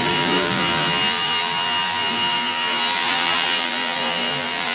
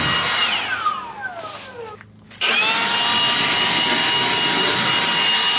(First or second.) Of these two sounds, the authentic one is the second